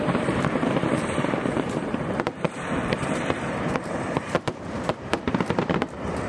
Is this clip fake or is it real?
fake